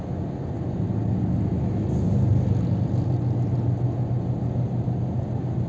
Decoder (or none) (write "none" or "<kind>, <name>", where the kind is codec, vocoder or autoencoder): none